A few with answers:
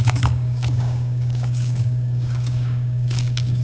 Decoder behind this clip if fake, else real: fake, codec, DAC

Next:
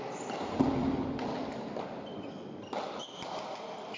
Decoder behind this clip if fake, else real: real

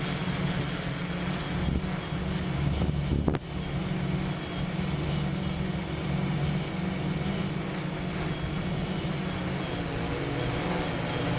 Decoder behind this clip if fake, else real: real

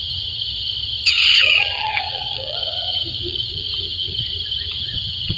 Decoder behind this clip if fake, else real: fake, vocoder, HiFi-GAN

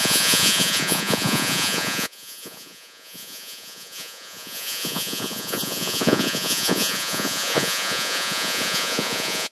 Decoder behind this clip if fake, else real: fake, vocoder, Vocos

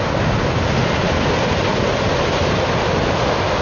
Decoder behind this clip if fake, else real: real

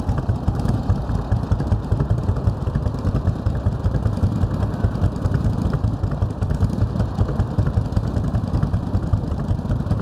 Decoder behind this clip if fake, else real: fake, vocoder, BigVGAN v2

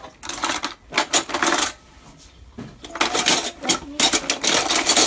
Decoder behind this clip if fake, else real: real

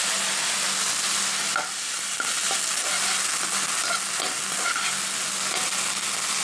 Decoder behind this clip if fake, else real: real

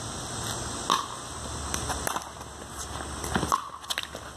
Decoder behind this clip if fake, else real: real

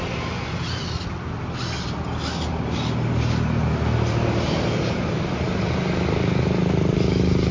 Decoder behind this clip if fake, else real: real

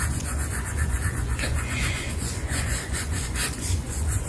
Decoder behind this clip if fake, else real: fake, vocoder, Vocos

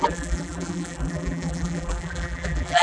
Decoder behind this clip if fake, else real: fake, vocoder, BigVGAN v2